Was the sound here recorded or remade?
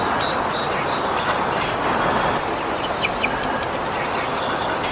recorded